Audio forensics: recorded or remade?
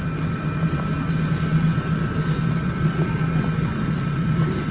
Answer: recorded